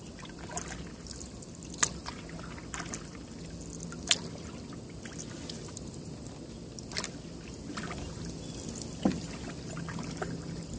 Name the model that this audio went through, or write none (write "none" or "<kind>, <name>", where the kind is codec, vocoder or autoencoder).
none